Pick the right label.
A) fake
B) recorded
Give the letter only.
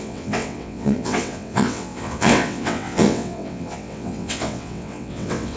A